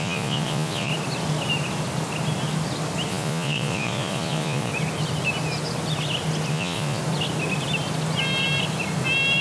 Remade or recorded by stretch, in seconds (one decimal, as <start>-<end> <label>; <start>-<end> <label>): 0.0-0.9 remade; 0.9-3.1 recorded; 3.1-4.7 remade; 4.7-6.5 recorded; 6.5-7.0 remade; 7.0-9.4 recorded